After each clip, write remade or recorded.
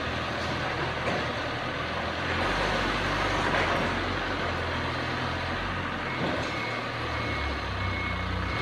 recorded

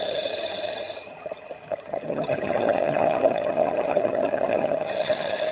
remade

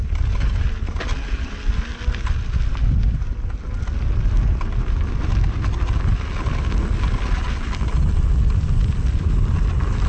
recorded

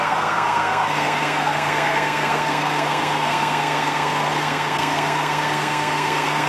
remade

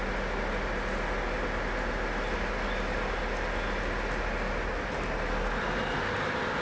recorded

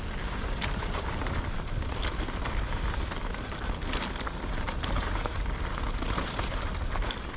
recorded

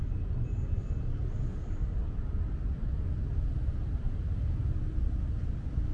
recorded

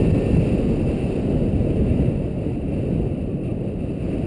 recorded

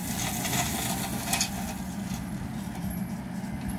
recorded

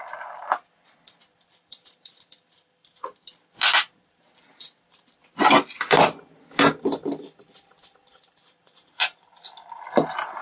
recorded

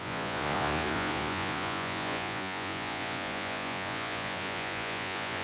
remade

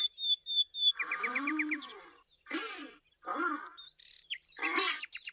remade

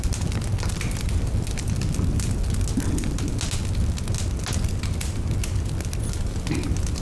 recorded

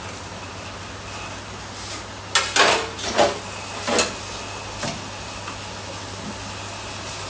recorded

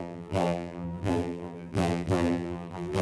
remade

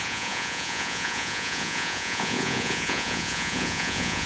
remade